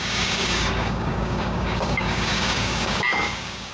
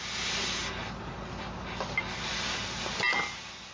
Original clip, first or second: second